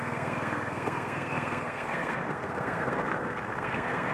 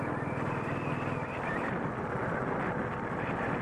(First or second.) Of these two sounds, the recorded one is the second